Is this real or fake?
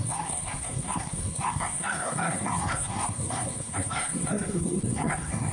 fake